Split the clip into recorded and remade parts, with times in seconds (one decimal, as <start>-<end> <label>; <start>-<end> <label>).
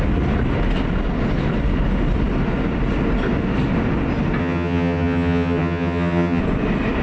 0.0-4.4 recorded; 4.4-6.4 remade; 6.4-7.0 recorded